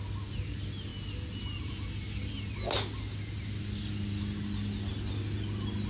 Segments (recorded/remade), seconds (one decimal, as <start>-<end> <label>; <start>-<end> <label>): 0.0-5.9 recorded